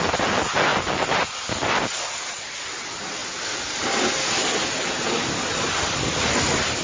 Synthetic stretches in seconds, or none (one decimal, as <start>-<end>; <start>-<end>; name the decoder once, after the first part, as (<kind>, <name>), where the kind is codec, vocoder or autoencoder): none